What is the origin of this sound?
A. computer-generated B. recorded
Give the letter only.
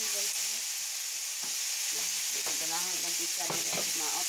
B